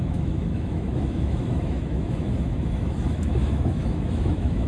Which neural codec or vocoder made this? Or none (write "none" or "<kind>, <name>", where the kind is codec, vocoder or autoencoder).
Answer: autoencoder, DAC-VAE